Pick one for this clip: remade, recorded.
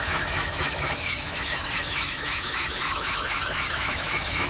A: remade